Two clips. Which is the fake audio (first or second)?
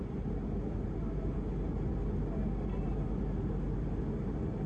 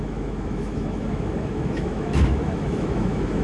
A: second